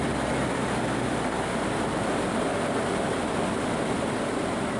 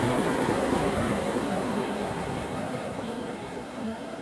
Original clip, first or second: first